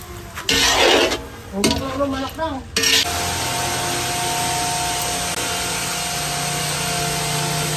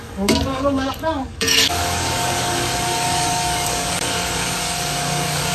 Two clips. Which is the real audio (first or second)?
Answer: first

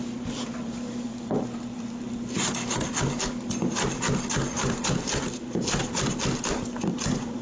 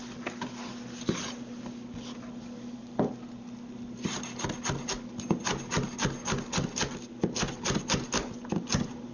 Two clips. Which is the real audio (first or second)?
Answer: second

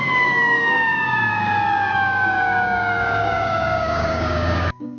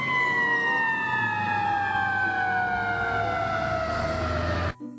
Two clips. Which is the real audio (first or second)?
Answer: second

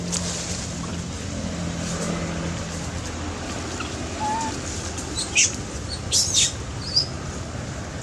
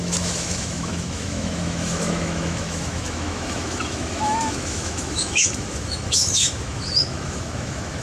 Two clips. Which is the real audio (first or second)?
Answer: first